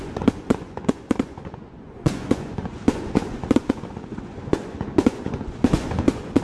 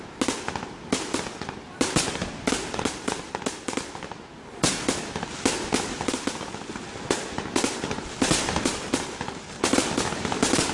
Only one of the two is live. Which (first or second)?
second